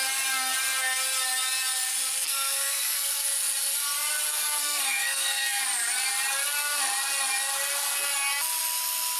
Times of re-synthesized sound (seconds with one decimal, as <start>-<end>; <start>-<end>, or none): 2.2-3.2; 4.6-5.6